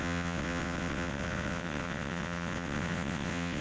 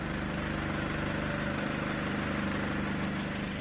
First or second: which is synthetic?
first